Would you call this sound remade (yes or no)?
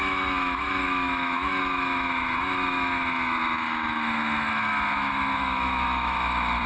yes